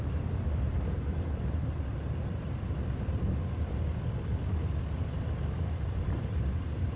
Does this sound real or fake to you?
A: real